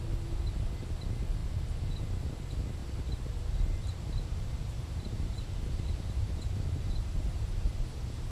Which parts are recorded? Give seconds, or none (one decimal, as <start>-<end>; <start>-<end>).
0.0-2.8; 7.7-8.3